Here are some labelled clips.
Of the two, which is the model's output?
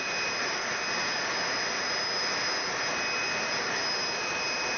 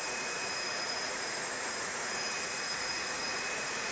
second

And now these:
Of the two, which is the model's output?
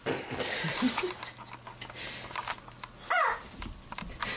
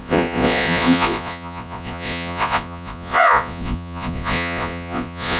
second